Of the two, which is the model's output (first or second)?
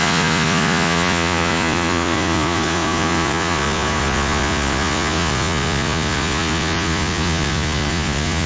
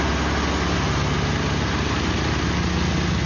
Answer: first